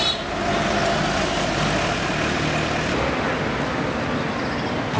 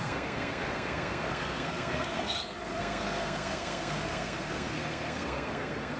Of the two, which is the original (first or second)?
first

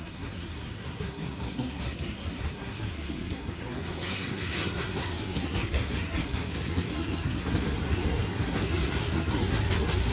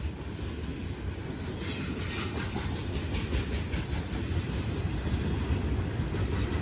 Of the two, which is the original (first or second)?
second